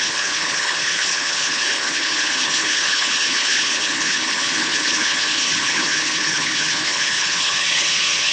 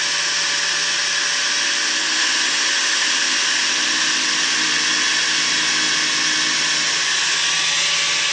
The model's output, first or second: first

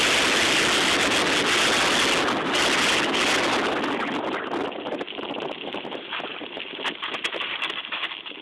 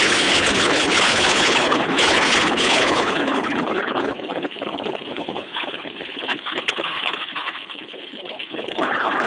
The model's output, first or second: second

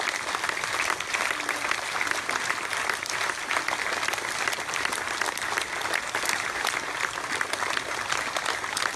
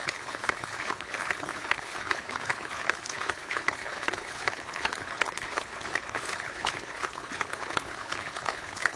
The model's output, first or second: second